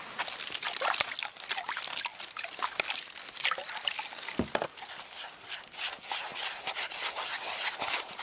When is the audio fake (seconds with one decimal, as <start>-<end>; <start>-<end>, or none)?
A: none